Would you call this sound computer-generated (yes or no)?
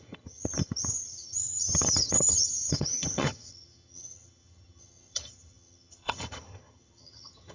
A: yes